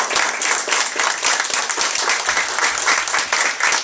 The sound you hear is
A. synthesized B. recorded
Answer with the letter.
B